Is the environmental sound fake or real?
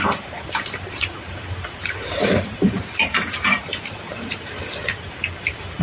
fake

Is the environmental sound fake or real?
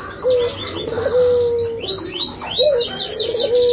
real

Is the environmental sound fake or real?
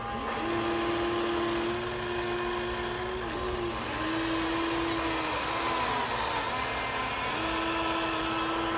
real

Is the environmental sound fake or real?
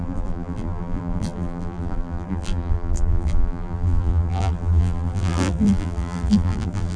fake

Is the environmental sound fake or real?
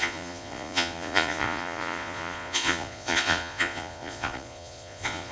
fake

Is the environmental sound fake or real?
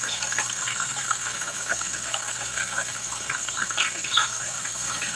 fake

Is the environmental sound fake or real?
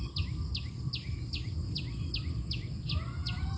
real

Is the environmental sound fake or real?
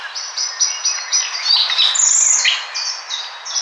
real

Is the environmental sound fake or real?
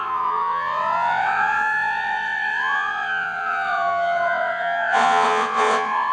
fake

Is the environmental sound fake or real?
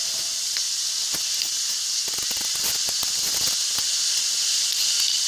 real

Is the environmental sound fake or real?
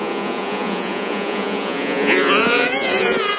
fake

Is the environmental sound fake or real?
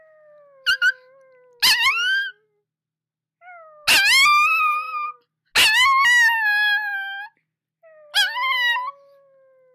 real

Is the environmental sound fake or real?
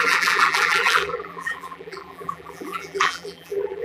fake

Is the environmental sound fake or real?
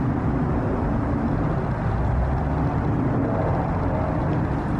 real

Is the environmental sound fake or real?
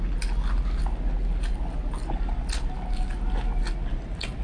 real